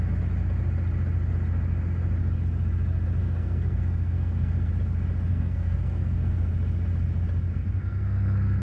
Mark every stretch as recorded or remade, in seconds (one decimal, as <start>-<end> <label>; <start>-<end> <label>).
0.0-3.2 recorded; 3.2-4.7 remade; 4.7-5.3 recorded; 5.3-6.5 remade; 6.5-7.5 recorded; 7.5-8.6 remade